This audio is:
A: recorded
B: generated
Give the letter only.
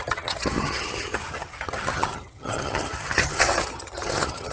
B